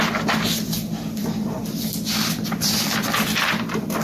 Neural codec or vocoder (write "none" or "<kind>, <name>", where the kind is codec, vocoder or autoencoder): none